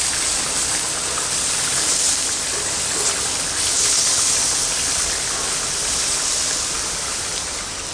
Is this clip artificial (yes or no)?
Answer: no